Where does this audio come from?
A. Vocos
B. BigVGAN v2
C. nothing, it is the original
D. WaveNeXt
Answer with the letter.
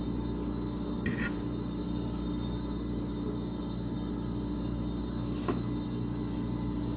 C